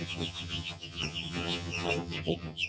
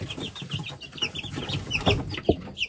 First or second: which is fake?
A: first